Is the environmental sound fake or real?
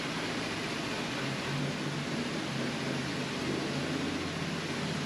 real